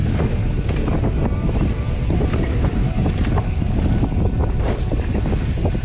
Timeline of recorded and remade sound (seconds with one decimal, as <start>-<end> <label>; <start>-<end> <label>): 0.0-5.8 recorded